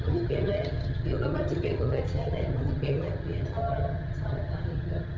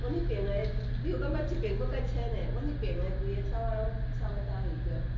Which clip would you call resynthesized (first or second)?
first